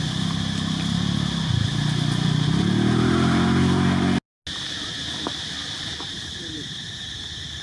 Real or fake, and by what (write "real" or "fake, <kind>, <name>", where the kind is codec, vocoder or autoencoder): real